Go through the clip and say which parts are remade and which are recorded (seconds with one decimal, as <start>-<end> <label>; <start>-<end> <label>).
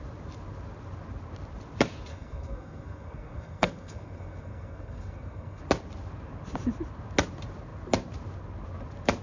0.0-2.1 recorded; 2.1-5.6 remade; 5.6-9.2 recorded